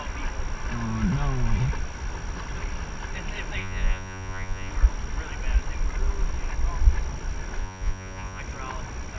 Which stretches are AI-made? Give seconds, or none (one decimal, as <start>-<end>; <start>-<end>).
3.6-4.7; 7.6-8.4